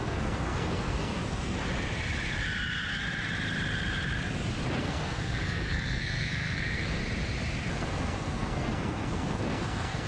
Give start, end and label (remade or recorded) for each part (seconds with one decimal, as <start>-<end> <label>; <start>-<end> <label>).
0.0-1.6 remade; 1.6-4.8 recorded; 4.8-7.0 remade; 7.0-7.7 recorded; 7.7-10.1 remade

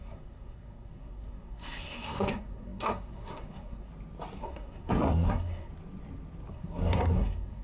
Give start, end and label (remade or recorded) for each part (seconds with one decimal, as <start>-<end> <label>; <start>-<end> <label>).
0.0-3.9 remade; 3.9-4.4 recorded; 4.4-5.7 remade; 5.7-6.5 recorded; 6.5-7.6 remade